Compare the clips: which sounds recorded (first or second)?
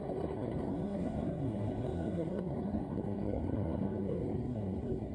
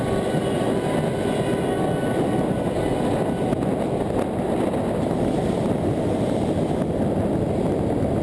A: second